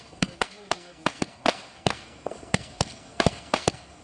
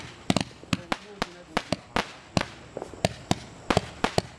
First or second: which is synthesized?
first